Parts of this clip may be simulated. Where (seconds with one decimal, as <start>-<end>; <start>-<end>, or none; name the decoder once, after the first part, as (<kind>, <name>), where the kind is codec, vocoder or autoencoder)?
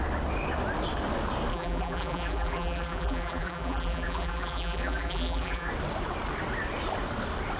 1.5-5.7 (vocoder, BigVGAN v2)